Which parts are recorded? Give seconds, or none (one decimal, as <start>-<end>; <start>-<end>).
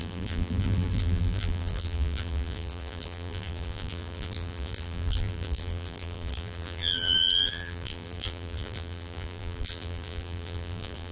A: none